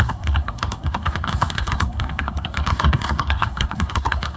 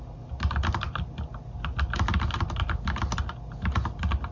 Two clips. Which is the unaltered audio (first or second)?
second